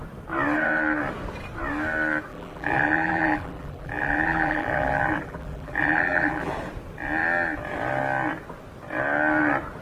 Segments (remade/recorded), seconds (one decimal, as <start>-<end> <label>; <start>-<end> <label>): 0.0-2.3 recorded; 2.3-6.5 remade; 6.5-9.8 recorded

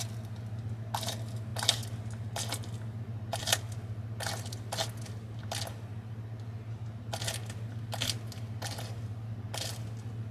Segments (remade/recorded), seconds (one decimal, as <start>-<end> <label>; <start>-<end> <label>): 0.0-10.3 recorded

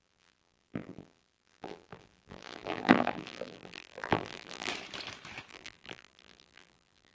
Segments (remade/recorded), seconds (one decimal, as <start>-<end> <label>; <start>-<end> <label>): 0.0-4.7 remade; 4.7-5.5 recorded; 5.5-7.1 remade

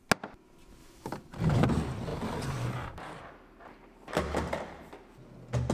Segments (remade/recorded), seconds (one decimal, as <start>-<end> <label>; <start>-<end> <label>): 0.0-0.8 recorded; 0.8-1.6 remade; 1.6-2.1 recorded; 2.1-4.9 remade; 4.9-5.7 recorded

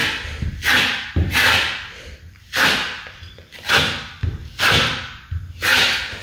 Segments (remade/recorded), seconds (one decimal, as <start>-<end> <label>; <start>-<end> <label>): 0.0-3.7 remade; 3.7-4.4 recorded; 4.4-5.2 remade; 5.2-6.2 recorded

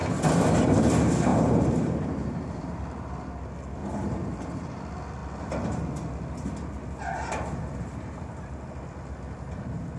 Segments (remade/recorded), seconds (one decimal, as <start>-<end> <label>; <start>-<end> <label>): 0.0-1.3 recorded; 1.3-2.8 remade; 2.8-3.8 recorded; 3.8-4.8 remade; 4.8-10.0 recorded

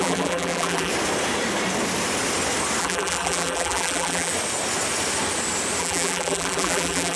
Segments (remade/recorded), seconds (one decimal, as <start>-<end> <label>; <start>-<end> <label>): 0.0-0.9 remade; 0.9-2.8 recorded; 2.8-4.3 remade; 4.3-5.8 recorded; 5.8-7.2 remade